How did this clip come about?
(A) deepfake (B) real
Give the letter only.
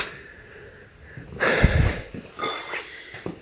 B